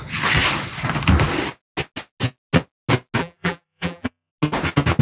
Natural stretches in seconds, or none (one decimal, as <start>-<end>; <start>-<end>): 0.0-3.2; 4.3-5.0